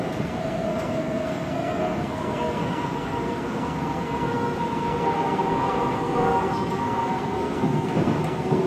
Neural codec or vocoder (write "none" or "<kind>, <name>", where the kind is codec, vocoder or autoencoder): codec, SNAC